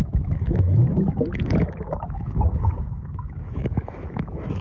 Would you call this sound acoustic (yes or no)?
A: no